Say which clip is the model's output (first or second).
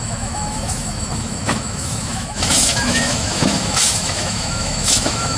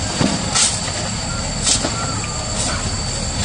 first